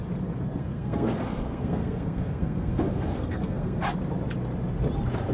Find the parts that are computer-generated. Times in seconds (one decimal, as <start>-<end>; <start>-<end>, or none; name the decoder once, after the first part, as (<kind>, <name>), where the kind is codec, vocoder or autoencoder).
0.6-3.8 (codec, SNAC)